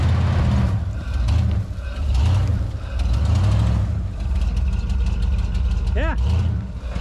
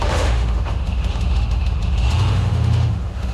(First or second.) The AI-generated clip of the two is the second